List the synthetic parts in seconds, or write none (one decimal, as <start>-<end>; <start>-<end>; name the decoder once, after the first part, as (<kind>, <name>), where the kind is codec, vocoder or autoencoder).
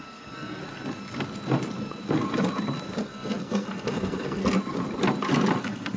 0.0-0.6 (codec, SNAC); 3.0-4.4; 5.6-6.0